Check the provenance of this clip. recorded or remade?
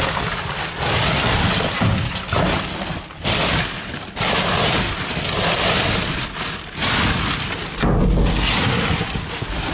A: recorded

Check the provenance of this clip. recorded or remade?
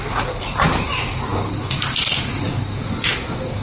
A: recorded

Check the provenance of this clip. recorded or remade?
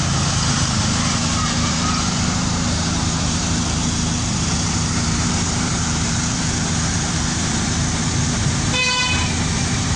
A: remade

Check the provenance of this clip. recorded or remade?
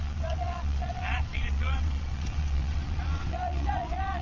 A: remade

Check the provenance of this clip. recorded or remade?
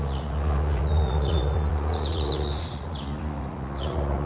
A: remade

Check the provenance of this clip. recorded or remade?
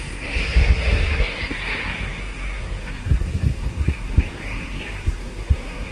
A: remade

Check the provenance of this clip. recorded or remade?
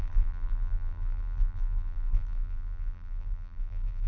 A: remade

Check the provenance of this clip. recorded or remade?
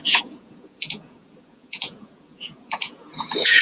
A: remade